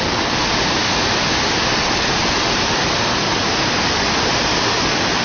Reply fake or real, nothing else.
real